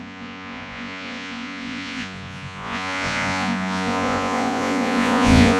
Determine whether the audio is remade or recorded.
remade